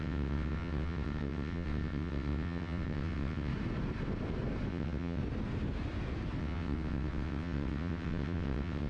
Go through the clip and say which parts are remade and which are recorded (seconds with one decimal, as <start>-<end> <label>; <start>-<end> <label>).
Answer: 0.0-3.5 remade; 3.5-4.7 recorded; 4.7-5.2 remade; 5.2-6.4 recorded; 6.4-8.9 remade